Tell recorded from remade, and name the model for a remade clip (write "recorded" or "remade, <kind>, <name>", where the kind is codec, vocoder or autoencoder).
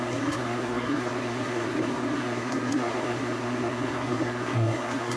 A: remade, codec, SNAC